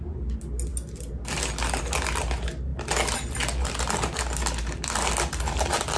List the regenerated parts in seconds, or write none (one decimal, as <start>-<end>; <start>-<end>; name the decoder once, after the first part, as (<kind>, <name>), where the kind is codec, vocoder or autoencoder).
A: none